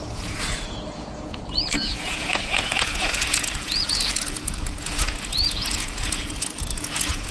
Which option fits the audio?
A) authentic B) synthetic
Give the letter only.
B